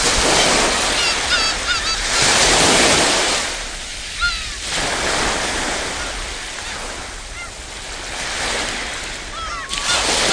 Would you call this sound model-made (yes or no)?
no